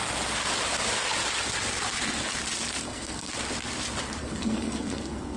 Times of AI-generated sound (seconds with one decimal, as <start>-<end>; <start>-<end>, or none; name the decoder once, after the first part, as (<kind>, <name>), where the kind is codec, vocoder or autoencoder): 2.8-3.3 (codec, SNAC); 4.2-5.4